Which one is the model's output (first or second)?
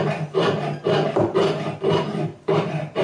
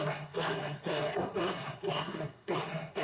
second